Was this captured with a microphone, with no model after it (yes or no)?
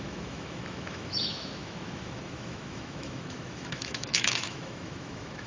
no